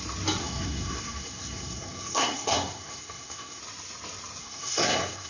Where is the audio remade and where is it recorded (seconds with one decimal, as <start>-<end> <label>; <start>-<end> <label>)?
0.0-0.4 recorded; 0.4-3.6 remade; 3.6-4.4 recorded; 4.4-5.3 remade